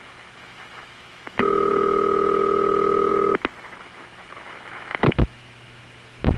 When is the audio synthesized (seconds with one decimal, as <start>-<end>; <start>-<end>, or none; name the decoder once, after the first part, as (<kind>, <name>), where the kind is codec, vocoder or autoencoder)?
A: 0.0-3.1 (autoencoder, DAC-VAE); 3.8-6.4